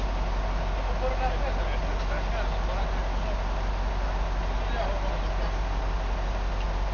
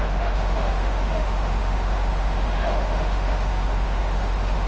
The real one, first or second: first